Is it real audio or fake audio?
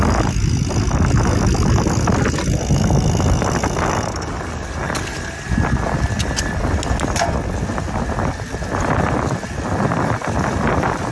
real